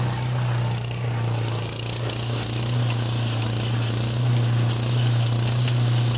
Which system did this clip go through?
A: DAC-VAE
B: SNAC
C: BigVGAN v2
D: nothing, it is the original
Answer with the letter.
D